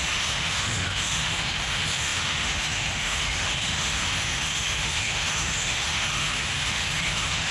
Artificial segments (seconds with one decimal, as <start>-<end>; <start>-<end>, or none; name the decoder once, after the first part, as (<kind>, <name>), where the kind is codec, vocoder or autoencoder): 0.0-7.5 (autoencoder, DAC-VAE)